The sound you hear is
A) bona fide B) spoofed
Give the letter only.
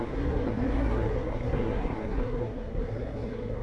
B